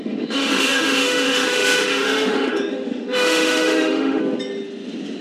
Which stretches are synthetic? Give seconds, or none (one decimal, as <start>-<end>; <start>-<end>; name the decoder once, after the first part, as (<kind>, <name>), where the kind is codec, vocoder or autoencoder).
0.0-4.2 (autoencoder, DAC-VAE)